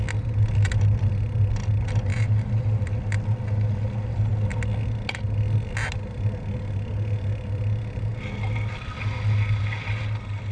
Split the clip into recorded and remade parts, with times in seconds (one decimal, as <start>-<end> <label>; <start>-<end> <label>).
0.0-2.1 recorded; 2.1-2.8 remade; 2.8-10.5 recorded